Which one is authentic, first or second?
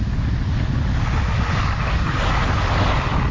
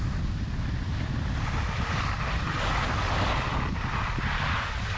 first